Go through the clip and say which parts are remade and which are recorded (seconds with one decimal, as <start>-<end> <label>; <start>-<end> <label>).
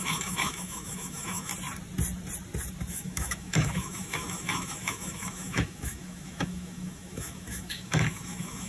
0.0-1.5 remade; 1.5-2.9 recorded; 2.9-8.7 remade